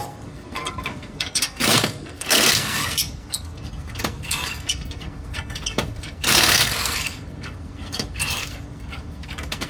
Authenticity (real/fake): fake